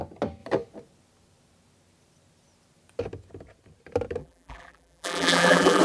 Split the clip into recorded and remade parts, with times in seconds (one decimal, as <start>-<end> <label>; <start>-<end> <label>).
0.0-4.2 recorded; 4.2-5.8 remade